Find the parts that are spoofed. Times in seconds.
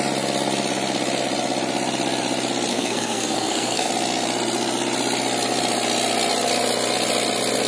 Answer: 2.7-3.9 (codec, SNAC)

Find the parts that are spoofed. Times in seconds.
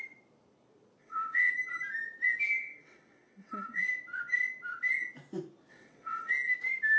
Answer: 1.0-1.5 (vocoder, WaveNeXt); 2.6-3.8; 5.7-6.3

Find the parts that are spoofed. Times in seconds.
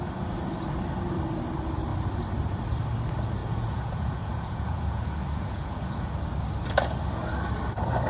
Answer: 3.4-6.1 (vocoder, Vocos)